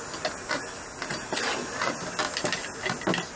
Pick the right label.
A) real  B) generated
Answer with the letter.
A